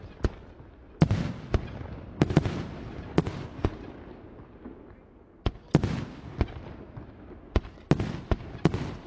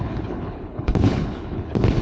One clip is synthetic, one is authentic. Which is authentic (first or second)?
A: first